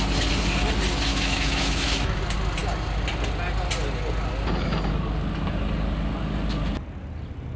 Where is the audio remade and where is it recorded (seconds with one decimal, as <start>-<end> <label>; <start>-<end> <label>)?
0.0-1.1 recorded; 1.1-2.2 remade; 2.2-7.6 recorded